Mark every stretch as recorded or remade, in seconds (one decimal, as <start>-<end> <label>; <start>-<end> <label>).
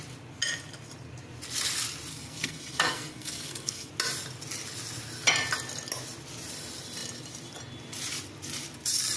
0.0-2.1 recorded; 2.1-3.9 remade; 3.9-9.2 recorded